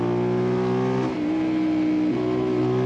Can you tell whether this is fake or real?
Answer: real